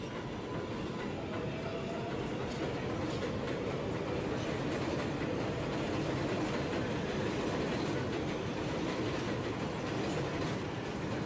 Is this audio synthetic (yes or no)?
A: no